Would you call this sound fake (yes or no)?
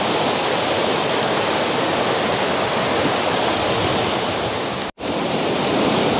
no